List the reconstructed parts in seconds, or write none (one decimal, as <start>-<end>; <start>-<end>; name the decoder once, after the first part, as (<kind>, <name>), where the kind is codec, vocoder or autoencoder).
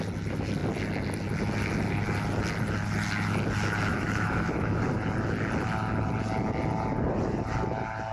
3.9-4.8 (autoencoder, DAC-VAE)